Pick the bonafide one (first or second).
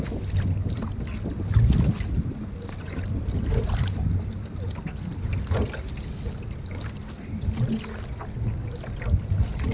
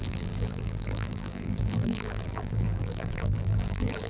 first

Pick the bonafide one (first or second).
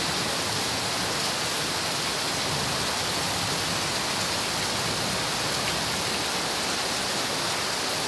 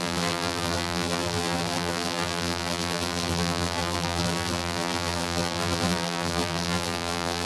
first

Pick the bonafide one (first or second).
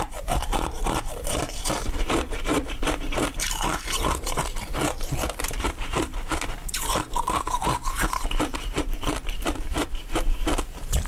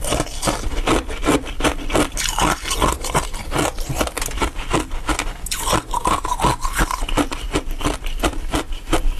second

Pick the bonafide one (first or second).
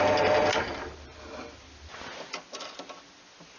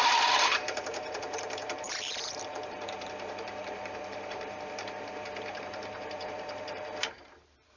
first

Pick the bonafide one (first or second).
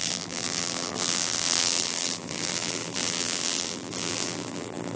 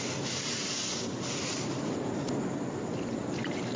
second